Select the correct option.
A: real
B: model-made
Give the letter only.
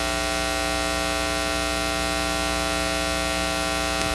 A